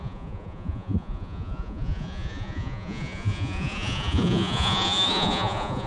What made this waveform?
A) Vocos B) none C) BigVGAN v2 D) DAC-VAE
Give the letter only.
A